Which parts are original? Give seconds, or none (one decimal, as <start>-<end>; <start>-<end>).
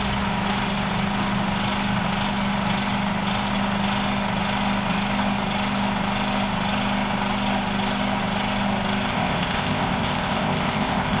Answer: 0.0-9.1